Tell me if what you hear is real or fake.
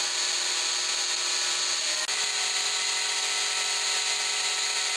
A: real